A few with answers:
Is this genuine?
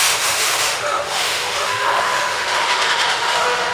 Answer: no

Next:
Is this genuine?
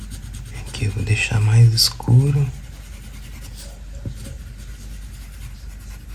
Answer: yes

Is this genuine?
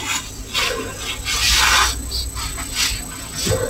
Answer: yes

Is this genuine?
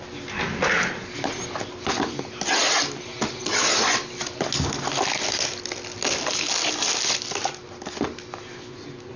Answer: yes